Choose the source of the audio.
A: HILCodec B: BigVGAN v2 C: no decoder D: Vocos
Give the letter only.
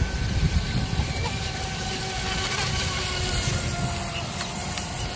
C